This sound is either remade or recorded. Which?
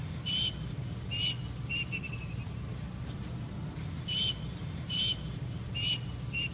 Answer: recorded